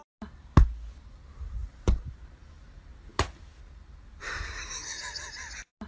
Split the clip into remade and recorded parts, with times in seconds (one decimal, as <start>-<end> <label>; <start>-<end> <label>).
0.0-1.6 recorded; 1.6-2.5 remade; 2.5-5.9 recorded